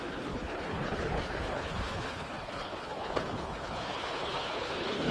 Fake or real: fake